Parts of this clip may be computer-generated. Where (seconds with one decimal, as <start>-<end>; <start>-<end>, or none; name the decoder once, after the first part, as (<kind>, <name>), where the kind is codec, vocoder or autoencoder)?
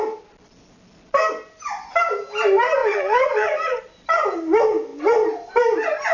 2.8-3.8 (vocoder, Vocos)